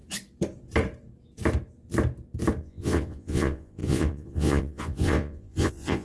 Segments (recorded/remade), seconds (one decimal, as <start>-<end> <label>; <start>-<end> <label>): 0.0-2.6 recorded; 2.6-6.0 remade